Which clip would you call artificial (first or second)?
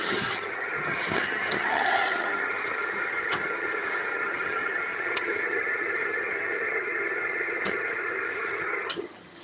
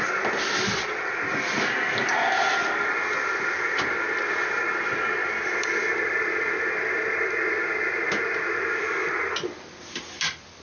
first